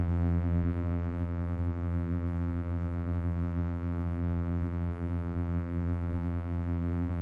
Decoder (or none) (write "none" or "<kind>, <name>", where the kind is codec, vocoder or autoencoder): vocoder, BigVGAN v2